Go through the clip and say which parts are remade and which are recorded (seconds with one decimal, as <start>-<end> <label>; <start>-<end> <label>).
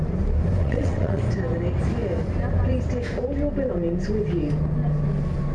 0.0-0.6 recorded; 0.6-1.2 remade; 1.2-5.5 recorded